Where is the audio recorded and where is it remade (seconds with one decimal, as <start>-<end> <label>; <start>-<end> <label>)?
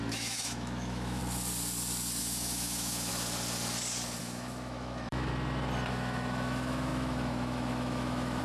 0.0-1.2 remade; 1.2-2.2 recorded; 2.2-3.1 remade; 3.1-4.2 recorded; 4.2-5.3 remade; 5.3-5.9 recorded; 5.9-8.4 remade